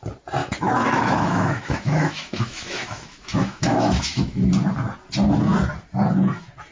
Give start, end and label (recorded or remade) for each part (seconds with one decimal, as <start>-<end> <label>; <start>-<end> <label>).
0.0-0.4 recorded; 0.4-4.4 remade; 4.4-6.7 recorded